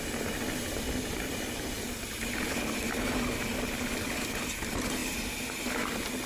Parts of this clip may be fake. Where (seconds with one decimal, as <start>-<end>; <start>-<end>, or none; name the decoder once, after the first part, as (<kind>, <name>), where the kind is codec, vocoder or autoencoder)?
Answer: none